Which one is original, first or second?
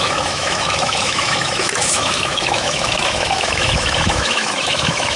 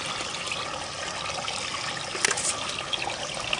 second